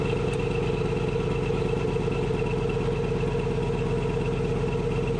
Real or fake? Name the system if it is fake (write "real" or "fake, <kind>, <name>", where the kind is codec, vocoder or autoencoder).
real